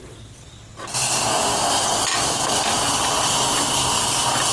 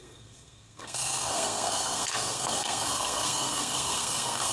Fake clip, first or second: second